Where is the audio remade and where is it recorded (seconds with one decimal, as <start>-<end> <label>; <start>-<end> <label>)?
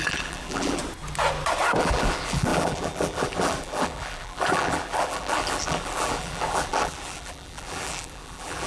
0.0-0.8 remade; 0.8-1.8 recorded; 1.8-8.7 remade